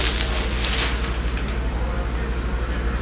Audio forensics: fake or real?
real